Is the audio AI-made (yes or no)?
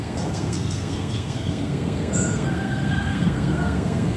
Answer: yes